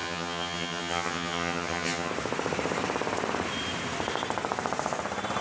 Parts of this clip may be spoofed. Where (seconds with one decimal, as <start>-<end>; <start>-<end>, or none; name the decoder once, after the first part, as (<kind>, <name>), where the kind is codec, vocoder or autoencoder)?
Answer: 0.0-2.1 (vocoder, HiFi-GAN)